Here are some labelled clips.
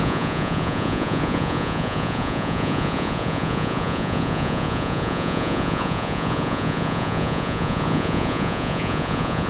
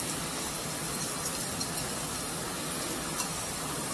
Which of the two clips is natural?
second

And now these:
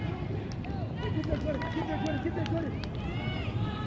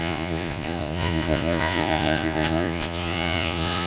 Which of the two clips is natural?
first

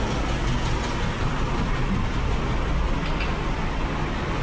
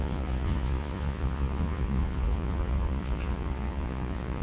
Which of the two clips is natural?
first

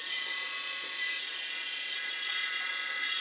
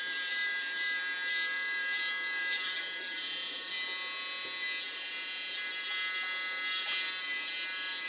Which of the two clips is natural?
second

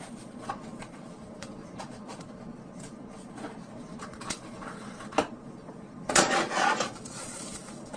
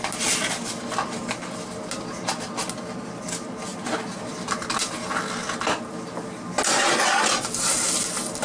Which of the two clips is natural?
second